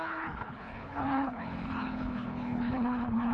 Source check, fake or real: fake